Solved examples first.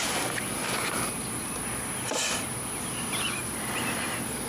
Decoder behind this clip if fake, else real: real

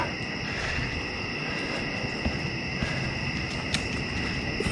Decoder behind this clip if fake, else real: real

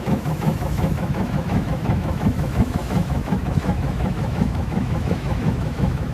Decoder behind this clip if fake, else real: fake, autoencoder, DAC-VAE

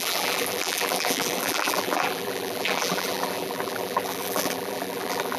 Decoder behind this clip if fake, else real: fake, vocoder, BigVGAN v2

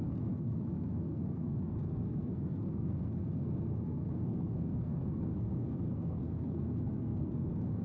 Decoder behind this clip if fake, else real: fake, codec, SNAC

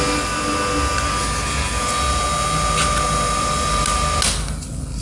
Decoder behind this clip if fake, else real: real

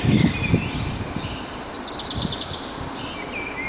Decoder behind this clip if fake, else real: real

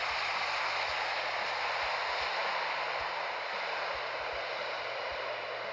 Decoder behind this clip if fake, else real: real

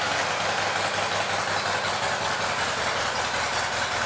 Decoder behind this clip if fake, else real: real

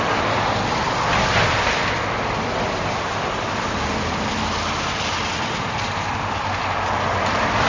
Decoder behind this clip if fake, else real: real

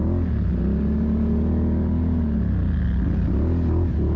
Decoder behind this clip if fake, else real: real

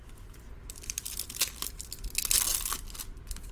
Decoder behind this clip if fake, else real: real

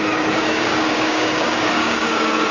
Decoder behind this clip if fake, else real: fake, codec, DAC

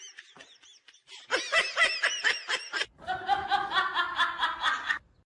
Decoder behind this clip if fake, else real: real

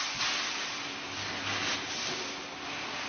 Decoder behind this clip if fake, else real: real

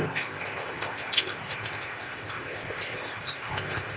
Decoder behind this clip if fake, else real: fake, codec, ZipCodec